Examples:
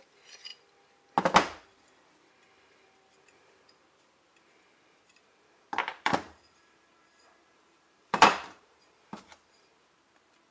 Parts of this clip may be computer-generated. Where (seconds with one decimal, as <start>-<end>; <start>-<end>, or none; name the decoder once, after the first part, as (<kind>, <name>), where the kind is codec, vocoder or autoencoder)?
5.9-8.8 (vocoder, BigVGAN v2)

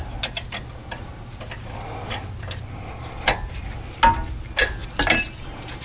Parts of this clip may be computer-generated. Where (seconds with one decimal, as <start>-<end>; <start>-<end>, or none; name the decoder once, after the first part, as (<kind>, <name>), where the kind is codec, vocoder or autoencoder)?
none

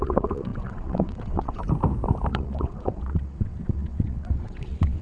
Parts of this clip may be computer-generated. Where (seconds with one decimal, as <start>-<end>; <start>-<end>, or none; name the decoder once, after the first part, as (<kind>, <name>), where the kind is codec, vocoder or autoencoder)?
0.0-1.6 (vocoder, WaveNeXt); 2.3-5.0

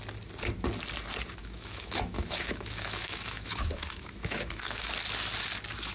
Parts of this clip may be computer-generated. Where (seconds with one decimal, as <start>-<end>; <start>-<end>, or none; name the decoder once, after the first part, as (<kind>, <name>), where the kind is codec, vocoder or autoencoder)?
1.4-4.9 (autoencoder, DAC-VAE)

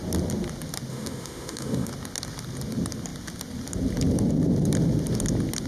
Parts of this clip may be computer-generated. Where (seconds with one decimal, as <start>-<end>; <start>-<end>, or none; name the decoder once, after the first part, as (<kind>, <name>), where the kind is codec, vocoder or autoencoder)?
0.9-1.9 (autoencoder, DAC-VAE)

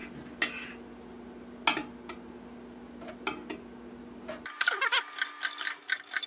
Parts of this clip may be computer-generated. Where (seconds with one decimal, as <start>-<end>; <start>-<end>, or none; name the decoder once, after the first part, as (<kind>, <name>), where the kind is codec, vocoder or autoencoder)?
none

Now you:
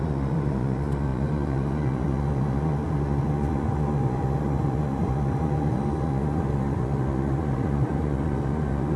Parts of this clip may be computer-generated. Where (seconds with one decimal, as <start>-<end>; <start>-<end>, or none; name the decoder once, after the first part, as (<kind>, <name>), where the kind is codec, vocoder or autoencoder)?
0.0-9.0 (vocoder, Vocos)